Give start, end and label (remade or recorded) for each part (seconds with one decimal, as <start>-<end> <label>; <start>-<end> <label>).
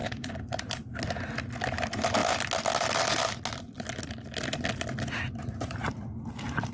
0.0-1.0 remade; 1.0-6.7 recorded